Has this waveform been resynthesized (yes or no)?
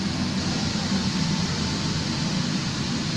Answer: no